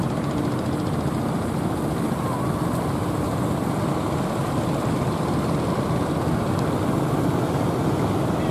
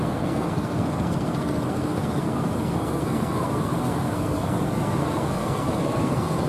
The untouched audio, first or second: first